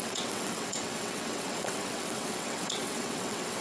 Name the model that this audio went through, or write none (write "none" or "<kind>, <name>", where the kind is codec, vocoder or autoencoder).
vocoder, WaveNeXt